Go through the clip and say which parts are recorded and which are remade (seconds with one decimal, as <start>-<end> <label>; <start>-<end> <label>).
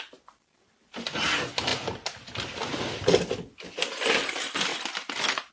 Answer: 0.0-5.5 recorded